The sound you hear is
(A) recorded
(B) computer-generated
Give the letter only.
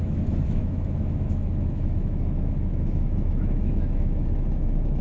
B